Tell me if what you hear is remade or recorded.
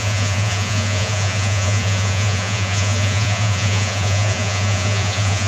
remade